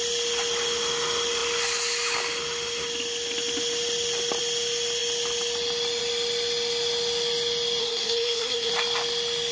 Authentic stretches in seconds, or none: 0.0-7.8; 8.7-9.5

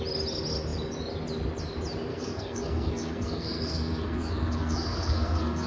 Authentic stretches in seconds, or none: 0.0-2.1